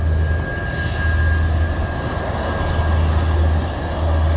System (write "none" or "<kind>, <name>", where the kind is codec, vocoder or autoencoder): none